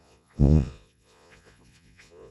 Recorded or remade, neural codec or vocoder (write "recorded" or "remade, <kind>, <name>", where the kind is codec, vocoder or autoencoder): remade, vocoder, Vocos